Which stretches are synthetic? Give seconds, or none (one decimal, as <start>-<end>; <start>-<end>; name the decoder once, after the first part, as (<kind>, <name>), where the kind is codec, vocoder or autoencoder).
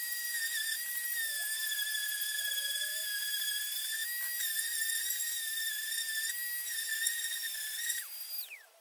0.0-2.9 (vocoder, BigVGAN v2); 3.6-4.0; 8.2-8.8